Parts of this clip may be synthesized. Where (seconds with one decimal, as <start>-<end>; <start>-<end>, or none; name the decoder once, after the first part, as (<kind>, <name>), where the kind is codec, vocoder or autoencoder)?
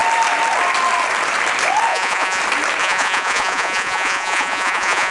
1.9-2.4 (vocoder, Vocos); 2.8-5.1